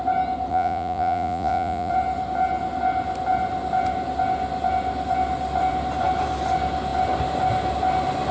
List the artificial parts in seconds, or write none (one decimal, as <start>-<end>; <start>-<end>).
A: 0.5-1.9